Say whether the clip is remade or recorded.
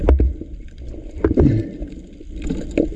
remade